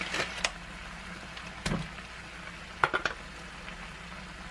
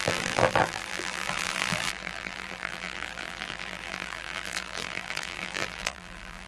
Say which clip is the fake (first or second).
second